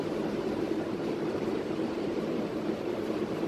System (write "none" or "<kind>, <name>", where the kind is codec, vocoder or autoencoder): vocoder, BigVGAN v2